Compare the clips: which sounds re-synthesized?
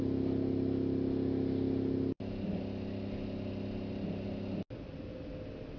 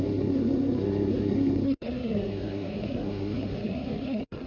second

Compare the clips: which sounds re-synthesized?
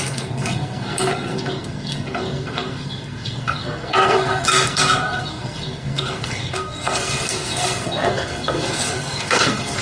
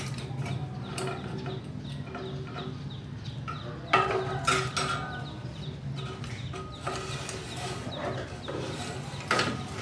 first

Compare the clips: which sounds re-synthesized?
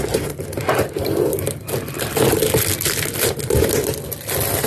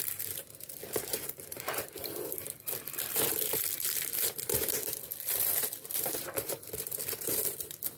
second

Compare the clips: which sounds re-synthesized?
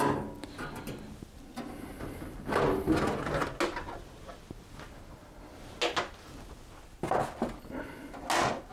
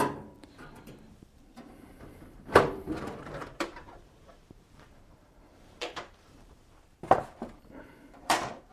second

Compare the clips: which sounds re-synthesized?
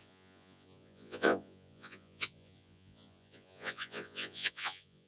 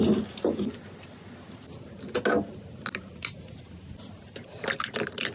first